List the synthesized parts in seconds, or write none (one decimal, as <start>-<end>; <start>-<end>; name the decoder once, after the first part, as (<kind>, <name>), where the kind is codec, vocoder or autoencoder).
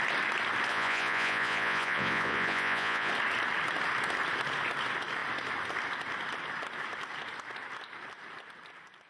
0.7-3.1 (vocoder, Vocos)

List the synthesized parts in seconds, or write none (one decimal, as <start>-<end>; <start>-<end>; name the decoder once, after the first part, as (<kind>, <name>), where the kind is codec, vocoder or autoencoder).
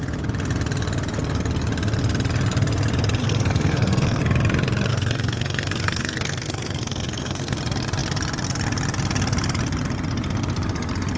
3.2-4.2 (codec, SNAC); 4.9-7.6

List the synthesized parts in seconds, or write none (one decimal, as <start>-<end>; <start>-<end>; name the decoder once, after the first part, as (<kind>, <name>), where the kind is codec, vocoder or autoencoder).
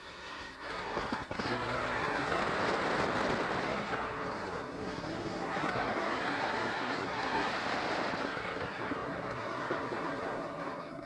0.0-2.4 (codec, SNAC); 3.6-7.5; 8.2-11.1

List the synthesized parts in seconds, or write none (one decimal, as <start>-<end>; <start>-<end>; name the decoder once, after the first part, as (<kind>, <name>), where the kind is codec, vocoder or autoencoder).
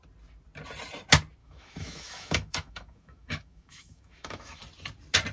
1.4-4.6 (autoencoder, DAC-VAE)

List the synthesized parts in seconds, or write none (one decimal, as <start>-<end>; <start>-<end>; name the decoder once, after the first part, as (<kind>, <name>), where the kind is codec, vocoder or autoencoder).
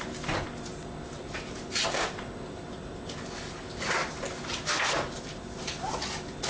none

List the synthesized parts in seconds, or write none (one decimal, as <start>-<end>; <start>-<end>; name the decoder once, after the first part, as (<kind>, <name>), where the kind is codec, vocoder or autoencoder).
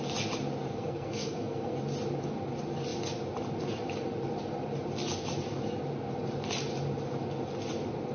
0.7-1.8 (codec, SNAC)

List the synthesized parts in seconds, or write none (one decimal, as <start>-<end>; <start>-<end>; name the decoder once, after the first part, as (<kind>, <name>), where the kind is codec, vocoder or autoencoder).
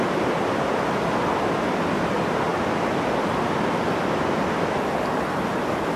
none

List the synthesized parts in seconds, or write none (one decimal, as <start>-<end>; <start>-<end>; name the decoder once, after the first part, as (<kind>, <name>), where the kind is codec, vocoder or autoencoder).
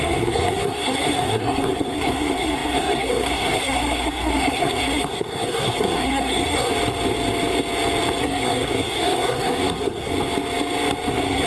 0.0-6.7 (codec, SNAC); 8.2-10.1; 11.1-11.5